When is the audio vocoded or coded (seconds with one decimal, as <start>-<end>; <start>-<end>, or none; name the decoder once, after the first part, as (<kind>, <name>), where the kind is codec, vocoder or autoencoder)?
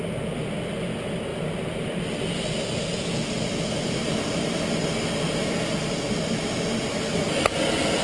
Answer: none